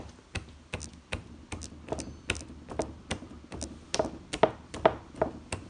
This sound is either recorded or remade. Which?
recorded